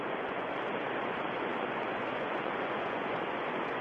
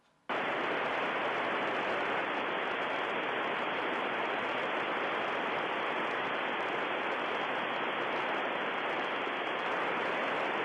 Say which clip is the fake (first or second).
first